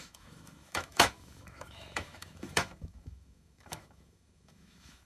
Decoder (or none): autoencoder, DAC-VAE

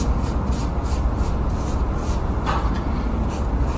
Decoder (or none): vocoder, BigVGAN v2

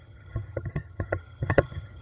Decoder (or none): vocoder, HiFi-GAN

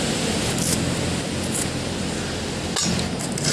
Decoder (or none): none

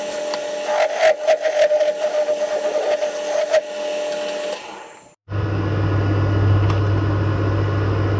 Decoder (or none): none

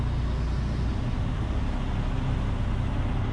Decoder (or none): none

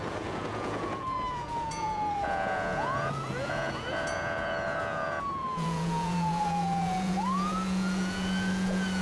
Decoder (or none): vocoder, Vocos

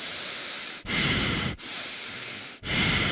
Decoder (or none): vocoder, BigVGAN v2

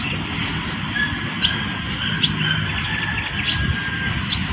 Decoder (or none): none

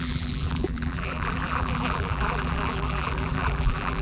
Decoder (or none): vocoder, BigVGAN v2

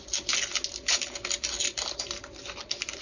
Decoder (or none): none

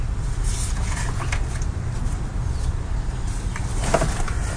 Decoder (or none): none